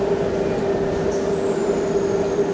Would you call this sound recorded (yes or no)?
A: yes